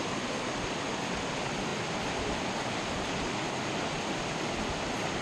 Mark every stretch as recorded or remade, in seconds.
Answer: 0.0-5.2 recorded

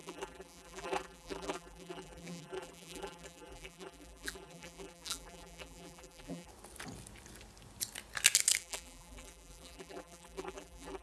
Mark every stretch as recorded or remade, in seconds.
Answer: 0.0-6.5 remade; 6.5-8.6 recorded; 8.6-11.0 remade

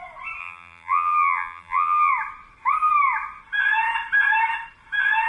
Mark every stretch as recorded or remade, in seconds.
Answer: 0.0-0.4 recorded; 0.4-2.1 remade; 2.1-5.3 recorded

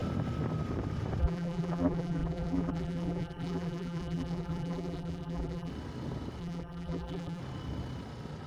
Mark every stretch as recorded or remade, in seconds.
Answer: 0.0-1.2 recorded; 1.2-5.7 remade; 5.7-6.4 recorded; 6.4-7.4 remade; 7.4-8.5 recorded

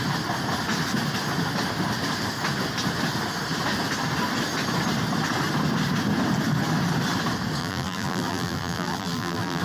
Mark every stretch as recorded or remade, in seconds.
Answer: 0.0-7.6 recorded; 7.6-9.6 remade

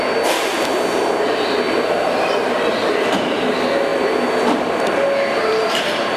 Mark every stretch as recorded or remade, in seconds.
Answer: 0.0-2.8 recorded; 2.8-3.5 remade; 3.5-5.5 recorded; 5.5-6.2 remade

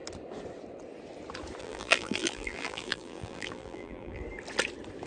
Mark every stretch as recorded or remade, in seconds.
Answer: 0.0-1.6 recorded; 1.6-4.2 remade; 4.2-5.1 recorded

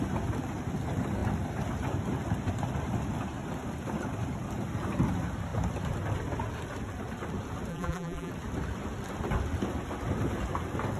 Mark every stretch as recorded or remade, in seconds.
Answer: 0.0-7.7 recorded; 7.7-8.3 remade; 8.3-11.0 recorded